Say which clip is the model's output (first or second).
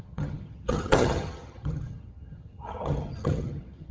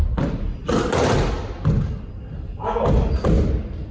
first